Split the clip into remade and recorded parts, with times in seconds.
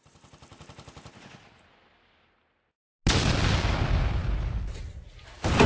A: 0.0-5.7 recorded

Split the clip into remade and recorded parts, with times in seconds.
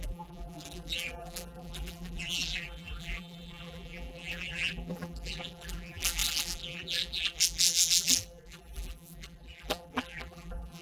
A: 0.0-10.8 remade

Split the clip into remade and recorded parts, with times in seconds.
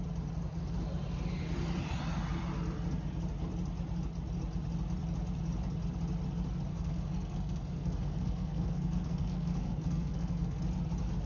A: 0.0-6.7 recorded; 6.7-10.6 remade; 10.6-11.3 recorded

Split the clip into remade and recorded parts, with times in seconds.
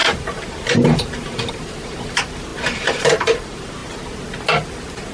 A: 0.0-3.8 remade; 3.8-5.1 recorded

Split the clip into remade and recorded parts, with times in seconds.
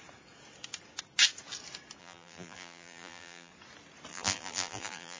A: 0.0-2.0 recorded; 2.0-3.5 remade; 3.5-4.1 recorded; 4.1-5.2 remade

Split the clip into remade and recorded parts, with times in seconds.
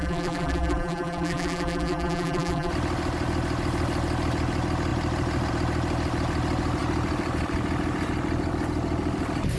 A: 0.0-2.7 remade; 2.7-9.6 recorded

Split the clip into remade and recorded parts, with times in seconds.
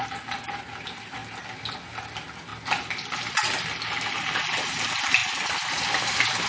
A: 0.0-6.5 recorded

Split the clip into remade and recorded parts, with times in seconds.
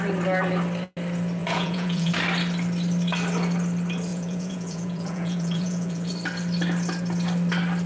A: 0.0-1.4 recorded; 1.4-2.1 remade; 2.1-4.1 recorded; 4.1-6.1 remade; 6.1-7.9 recorded